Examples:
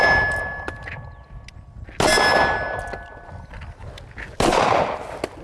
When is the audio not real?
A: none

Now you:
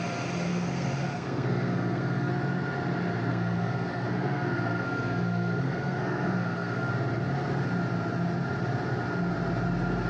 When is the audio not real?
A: 0.5-2.3 (codec, SNAC); 3.3-6.9

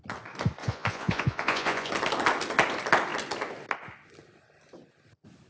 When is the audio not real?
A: 0.6-1.9 (vocoder, Vocos)

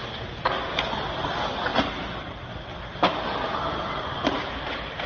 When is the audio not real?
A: none

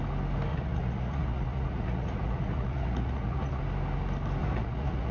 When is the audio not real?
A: 0.5-3.6 (vocoder, Vocos); 4.4-5.1